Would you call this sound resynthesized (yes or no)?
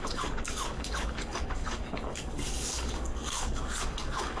yes